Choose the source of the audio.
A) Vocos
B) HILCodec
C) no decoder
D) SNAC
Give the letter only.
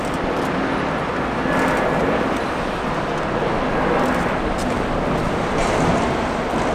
C